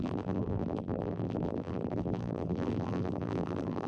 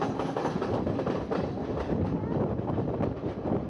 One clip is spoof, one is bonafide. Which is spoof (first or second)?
first